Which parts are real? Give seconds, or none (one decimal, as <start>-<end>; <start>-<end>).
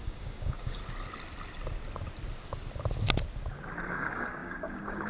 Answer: 0.8-3.9